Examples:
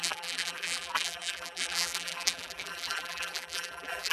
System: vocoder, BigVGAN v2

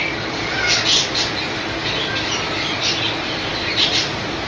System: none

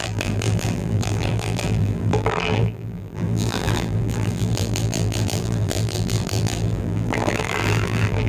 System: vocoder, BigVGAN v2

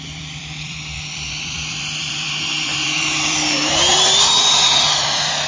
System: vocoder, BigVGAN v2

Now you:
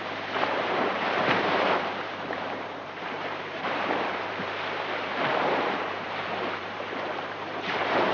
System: vocoder, BigVGAN v2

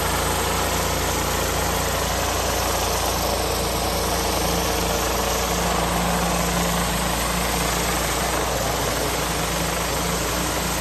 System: none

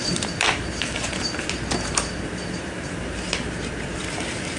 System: vocoder, BigVGAN v2